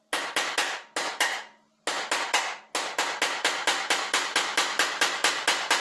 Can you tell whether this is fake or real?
real